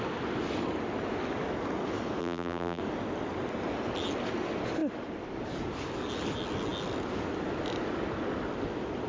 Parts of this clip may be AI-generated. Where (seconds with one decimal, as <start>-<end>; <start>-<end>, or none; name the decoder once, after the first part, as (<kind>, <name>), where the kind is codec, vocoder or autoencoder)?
2.2-2.8 (vocoder, BigVGAN v2)